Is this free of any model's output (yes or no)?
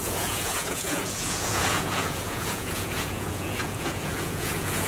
no